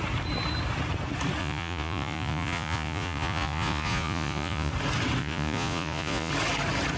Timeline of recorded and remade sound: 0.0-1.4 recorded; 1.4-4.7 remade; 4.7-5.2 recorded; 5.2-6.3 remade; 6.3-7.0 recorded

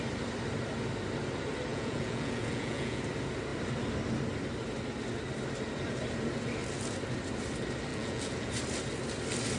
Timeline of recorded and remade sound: 0.0-1.7 recorded; 1.7-3.0 remade; 3.0-7.9 recorded; 7.9-8.5 remade; 8.5-9.6 recorded

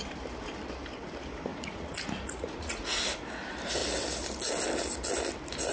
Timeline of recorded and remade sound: 0.0-1.5 recorded; 1.5-3.0 remade; 3.0-5.7 recorded

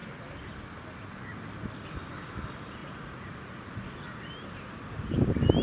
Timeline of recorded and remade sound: 0.0-2.8 recorded; 2.8-4.3 remade; 4.3-5.6 recorded

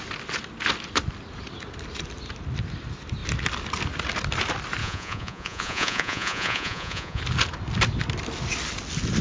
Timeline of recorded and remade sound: 0.0-4.8 recorded; 4.8-7.2 remade; 7.2-9.2 recorded

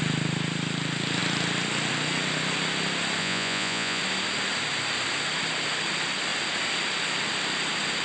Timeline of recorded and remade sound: 0.0-3.2 recorded; 3.2-4.0 remade; 4.0-8.0 recorded